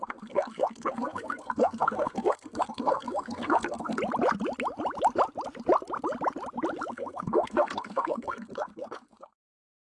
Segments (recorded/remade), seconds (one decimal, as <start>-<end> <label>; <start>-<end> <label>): 0.0-4.0 remade; 4.0-6.9 recorded; 6.9-9.9 remade